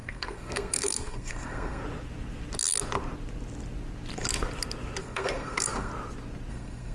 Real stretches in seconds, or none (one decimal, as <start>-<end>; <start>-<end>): 1.8-5.0; 5.9-6.5